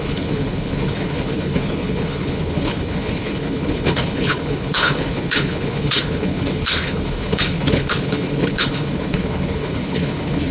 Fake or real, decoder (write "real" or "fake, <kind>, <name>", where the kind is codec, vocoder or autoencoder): fake, codec, HILCodec